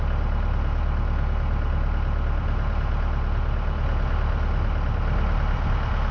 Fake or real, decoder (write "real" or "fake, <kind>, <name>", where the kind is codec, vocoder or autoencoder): real